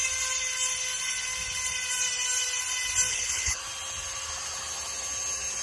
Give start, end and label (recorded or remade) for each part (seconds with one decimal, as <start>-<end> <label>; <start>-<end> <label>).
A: 0.0-3.1 recorded; 3.1-3.6 remade; 3.6-5.6 recorded